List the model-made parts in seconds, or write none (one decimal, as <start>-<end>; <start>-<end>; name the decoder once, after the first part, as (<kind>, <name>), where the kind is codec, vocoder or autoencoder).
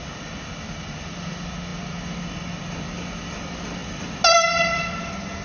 none